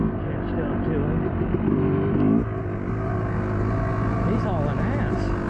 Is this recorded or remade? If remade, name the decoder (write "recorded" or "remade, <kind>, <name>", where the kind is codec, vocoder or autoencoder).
recorded